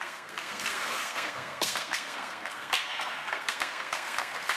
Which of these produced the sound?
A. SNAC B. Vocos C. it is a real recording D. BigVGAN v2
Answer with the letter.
A